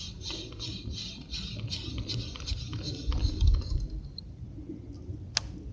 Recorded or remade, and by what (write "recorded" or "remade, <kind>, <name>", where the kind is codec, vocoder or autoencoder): recorded